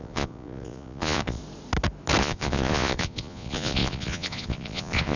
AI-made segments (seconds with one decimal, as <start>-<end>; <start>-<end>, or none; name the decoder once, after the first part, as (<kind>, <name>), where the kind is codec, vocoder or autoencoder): 0.0-1.4 (vocoder, Vocos); 2.2-5.2

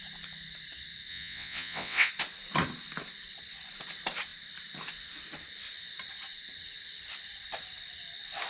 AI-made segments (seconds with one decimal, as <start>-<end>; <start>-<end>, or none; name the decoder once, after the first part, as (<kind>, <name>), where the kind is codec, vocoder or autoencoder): 1.1-2.1 (vocoder, WaveNeXt)

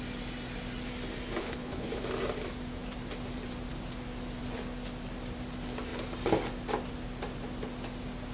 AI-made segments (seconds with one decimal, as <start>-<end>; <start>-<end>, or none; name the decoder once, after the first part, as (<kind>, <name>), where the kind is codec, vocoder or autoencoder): 1.4-2.0 (codec, HILCodec)